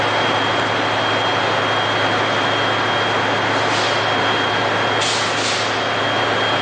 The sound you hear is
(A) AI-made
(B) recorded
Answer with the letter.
B